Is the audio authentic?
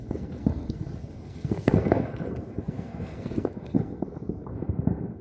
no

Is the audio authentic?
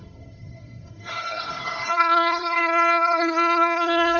no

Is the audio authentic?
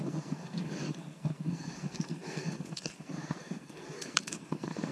no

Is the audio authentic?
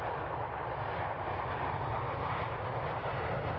yes